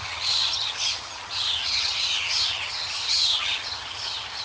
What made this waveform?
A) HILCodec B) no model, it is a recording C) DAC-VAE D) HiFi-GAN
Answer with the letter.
D